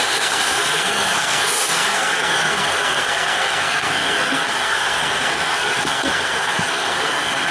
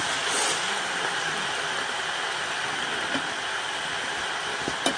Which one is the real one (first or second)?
second